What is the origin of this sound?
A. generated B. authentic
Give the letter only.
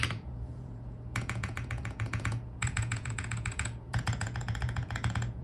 A